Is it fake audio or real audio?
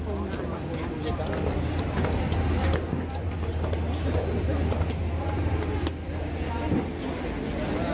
real